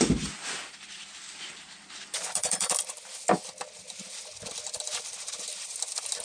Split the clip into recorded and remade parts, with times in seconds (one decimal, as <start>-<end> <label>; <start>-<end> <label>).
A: 0.0-6.2 recorded